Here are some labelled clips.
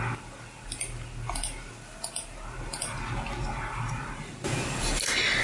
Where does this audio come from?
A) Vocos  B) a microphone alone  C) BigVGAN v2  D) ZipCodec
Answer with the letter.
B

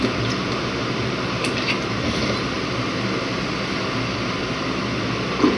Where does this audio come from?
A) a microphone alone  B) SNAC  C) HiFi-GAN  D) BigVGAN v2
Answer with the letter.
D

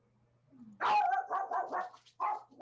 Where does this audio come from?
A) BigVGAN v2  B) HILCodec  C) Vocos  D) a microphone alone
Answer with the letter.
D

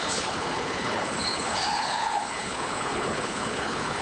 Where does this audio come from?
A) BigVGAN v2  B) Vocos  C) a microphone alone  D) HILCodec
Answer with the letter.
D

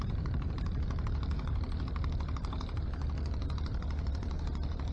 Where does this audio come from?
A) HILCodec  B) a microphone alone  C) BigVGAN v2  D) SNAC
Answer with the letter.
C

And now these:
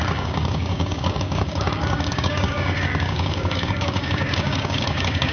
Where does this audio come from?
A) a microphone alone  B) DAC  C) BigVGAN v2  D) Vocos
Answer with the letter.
B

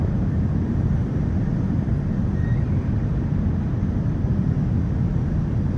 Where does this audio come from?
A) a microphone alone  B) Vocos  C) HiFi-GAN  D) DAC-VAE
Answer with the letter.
A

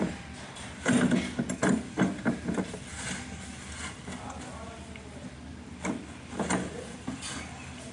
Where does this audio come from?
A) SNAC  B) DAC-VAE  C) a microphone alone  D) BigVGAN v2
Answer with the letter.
D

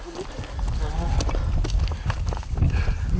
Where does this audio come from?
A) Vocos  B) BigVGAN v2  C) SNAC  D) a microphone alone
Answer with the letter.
D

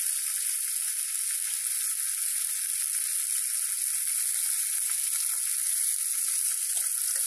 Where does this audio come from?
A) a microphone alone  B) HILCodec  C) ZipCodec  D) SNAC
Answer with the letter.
A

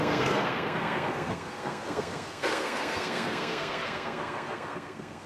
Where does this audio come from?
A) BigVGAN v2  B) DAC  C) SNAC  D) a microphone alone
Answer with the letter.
C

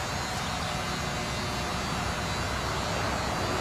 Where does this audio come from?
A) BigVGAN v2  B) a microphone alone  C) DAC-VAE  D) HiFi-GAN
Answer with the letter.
B